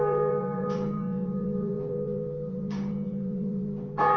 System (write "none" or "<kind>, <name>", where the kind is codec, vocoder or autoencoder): vocoder, Vocos